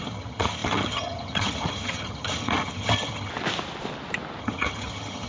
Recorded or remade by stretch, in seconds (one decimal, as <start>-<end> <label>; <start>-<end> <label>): 0.0-3.3 remade; 3.3-4.4 recorded; 4.4-5.3 remade